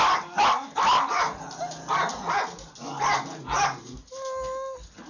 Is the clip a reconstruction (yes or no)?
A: no